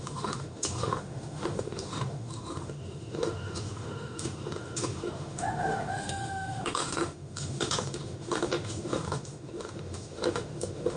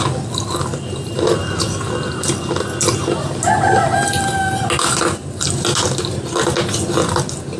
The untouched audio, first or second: second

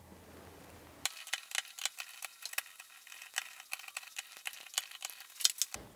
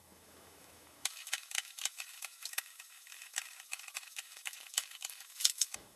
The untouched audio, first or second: first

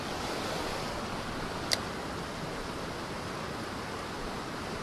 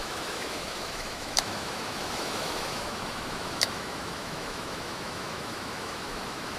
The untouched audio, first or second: first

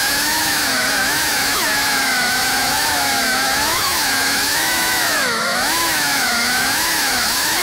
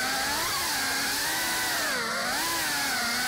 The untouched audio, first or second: second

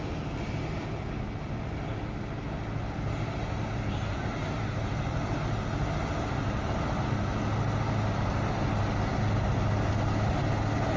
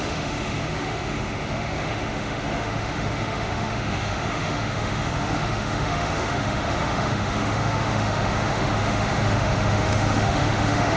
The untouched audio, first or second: first